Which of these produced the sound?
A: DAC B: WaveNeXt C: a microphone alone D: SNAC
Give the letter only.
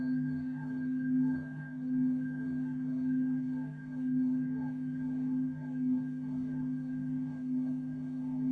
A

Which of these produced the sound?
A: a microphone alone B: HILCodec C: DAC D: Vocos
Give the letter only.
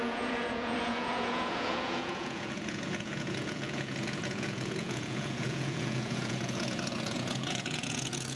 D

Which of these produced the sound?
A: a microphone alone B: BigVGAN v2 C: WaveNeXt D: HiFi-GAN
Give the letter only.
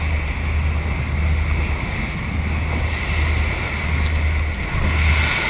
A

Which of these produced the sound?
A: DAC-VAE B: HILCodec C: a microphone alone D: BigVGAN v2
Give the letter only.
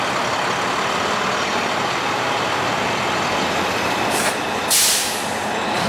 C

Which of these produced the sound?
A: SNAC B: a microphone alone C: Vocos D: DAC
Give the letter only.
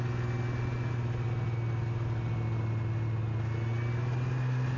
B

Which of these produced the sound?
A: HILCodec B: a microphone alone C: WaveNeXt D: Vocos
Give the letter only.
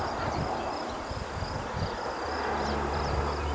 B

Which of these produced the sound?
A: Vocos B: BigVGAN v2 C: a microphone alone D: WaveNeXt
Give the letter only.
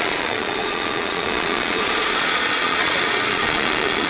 A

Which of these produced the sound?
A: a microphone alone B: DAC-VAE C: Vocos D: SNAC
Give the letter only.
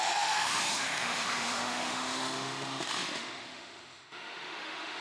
B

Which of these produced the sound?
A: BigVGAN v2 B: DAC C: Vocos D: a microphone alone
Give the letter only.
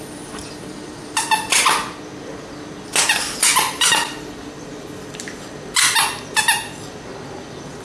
D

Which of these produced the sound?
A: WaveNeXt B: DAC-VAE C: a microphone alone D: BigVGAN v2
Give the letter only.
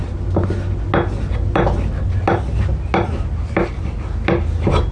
C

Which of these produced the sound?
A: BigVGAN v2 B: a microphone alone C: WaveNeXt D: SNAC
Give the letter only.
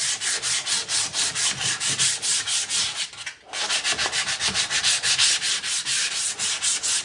B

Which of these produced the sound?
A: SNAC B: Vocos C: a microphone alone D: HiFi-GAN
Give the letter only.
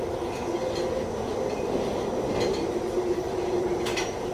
C